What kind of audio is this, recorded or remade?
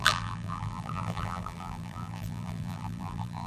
remade